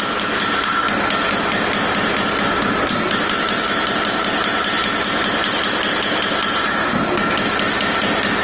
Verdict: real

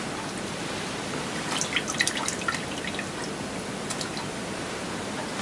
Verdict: real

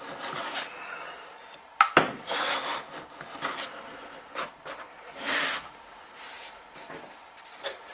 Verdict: real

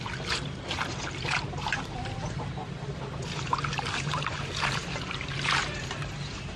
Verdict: fake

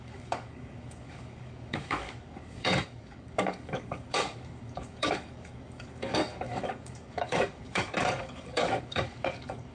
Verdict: fake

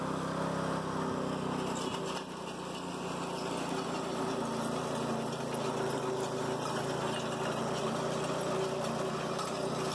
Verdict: real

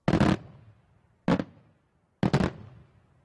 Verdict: real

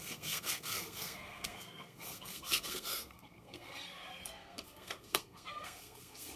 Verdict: fake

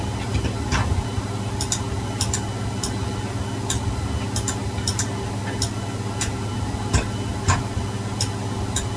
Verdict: real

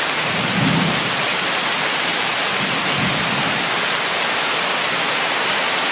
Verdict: real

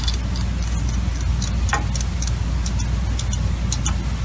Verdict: real